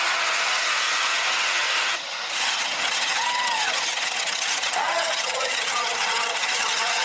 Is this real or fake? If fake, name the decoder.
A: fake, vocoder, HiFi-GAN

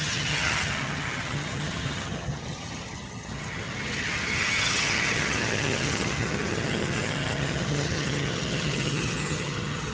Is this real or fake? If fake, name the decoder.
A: fake, vocoder, HiFi-GAN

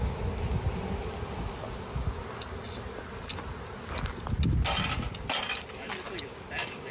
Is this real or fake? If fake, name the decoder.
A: real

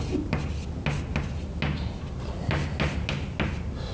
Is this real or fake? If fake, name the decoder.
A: real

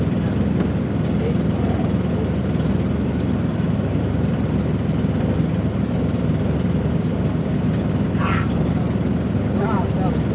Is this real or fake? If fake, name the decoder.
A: real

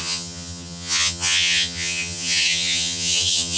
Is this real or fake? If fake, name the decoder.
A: fake, vocoder, HiFi-GAN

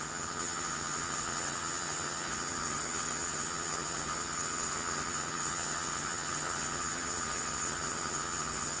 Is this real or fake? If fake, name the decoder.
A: fake, vocoder, HiFi-GAN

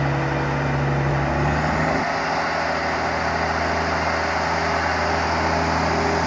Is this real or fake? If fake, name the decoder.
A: real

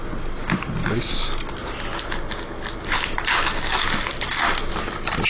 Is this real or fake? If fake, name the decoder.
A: real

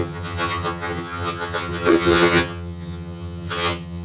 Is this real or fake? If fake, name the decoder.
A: fake, vocoder, HiFi-GAN